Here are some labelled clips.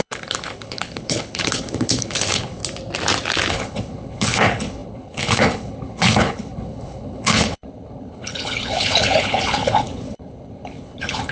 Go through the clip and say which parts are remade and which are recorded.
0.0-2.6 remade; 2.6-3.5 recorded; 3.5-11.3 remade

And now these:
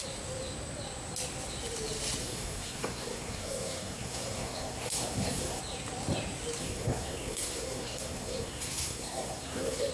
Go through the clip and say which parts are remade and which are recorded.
0.0-2.2 recorded; 2.2-5.6 remade; 5.6-6.6 recorded; 6.6-9.9 remade

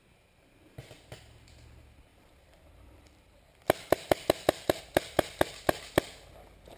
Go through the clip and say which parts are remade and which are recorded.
0.0-2.1 recorded; 2.1-4.8 remade; 4.8-6.8 recorded

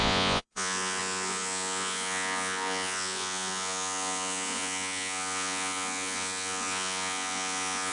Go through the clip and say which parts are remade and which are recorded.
0.0-7.9 remade

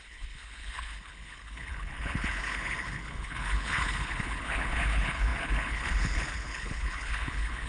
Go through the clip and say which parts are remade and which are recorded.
0.0-7.7 remade

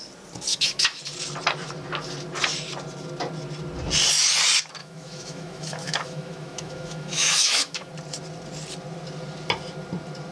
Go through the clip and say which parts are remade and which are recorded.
0.0-0.5 recorded; 0.5-1.0 remade; 1.0-4.8 recorded; 4.8-7.9 remade; 7.9-10.3 recorded

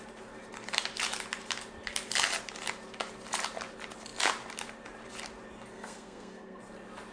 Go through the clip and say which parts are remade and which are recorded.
0.0-5.7 recorded; 5.7-6.6 remade; 6.6-7.1 recorded